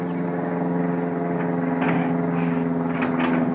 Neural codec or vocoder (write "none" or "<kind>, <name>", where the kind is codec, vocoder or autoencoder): none